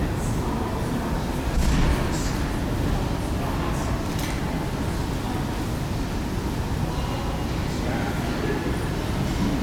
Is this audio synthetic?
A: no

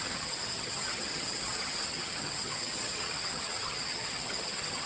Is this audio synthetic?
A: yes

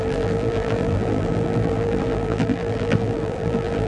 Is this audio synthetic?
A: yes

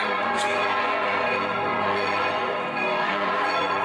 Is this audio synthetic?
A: yes